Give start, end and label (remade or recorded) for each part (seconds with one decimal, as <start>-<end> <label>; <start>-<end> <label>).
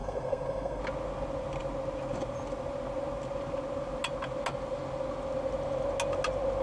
0.0-0.8 remade; 0.8-6.6 recorded